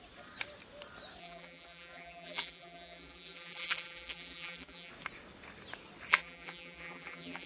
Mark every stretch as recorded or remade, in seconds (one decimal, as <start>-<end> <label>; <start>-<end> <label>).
0.0-1.2 recorded; 1.2-4.9 remade; 4.9-6.1 recorded; 6.1-7.5 remade